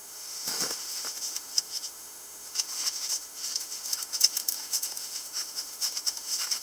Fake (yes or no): yes